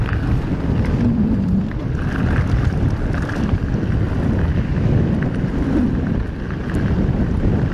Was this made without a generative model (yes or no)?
yes